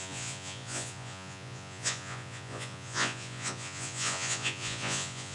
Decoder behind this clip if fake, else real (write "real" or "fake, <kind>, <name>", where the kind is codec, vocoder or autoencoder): fake, vocoder, Vocos